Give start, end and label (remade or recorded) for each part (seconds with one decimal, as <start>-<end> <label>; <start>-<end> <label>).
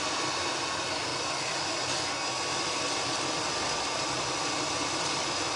0.0-5.6 recorded